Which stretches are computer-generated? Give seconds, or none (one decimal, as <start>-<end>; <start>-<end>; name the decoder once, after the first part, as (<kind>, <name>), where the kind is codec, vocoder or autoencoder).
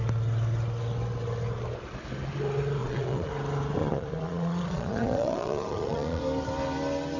2.8-3.3 (vocoder, Vocos); 3.8-6.2